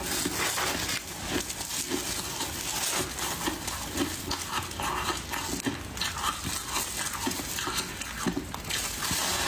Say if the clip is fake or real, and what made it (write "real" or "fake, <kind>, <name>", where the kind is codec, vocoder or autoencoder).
real